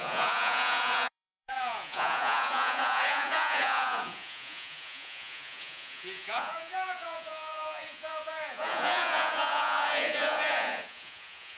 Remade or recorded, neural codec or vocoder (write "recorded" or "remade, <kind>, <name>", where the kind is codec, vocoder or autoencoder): remade, vocoder, Vocos